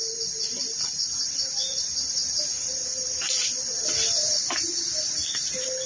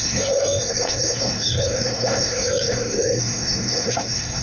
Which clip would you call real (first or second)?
first